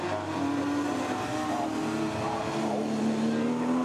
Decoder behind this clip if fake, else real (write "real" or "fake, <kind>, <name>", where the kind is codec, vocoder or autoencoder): real